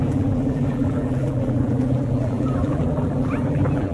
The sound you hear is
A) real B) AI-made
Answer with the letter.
B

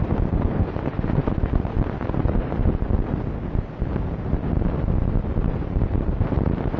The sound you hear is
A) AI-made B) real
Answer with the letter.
A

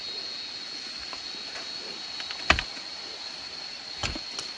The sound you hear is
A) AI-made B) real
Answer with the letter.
B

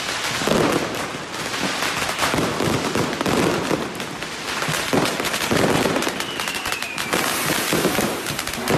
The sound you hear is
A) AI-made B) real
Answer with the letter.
B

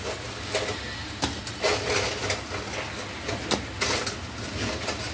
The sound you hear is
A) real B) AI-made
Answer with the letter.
A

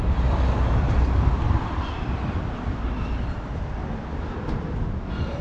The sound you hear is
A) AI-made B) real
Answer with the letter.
A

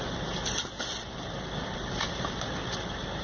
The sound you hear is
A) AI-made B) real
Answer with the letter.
A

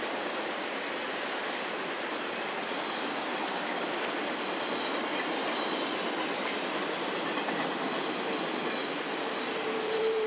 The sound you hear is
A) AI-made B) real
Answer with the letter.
A